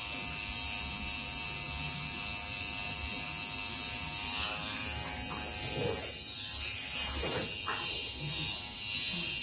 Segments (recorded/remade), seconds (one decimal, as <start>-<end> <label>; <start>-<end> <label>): 0.0-9.4 recorded